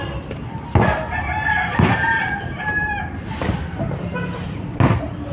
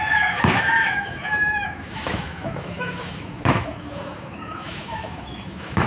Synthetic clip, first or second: second